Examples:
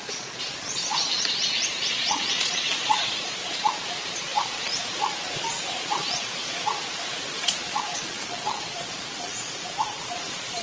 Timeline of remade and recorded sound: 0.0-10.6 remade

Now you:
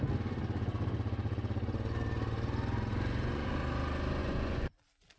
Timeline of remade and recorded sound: 0.0-2.9 recorded; 2.9-3.5 remade; 3.5-4.2 recorded; 4.2-4.8 remade; 4.8-5.2 recorded